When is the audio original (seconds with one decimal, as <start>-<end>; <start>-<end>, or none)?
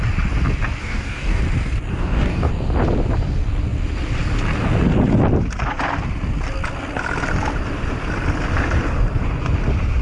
0.0-0.8; 1.4-1.9; 2.5-10.0